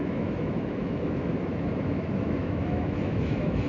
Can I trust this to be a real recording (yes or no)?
no